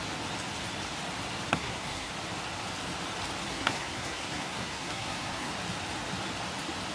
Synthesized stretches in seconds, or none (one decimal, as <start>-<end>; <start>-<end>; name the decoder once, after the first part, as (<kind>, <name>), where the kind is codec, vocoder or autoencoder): 1.5-2.1 (codec, SNAC); 3.5-5.5